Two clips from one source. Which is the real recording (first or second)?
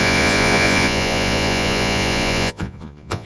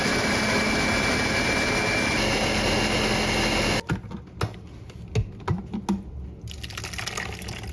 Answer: second